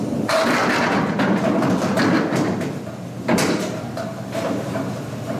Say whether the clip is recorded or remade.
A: recorded